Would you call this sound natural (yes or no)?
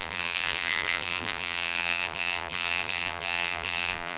no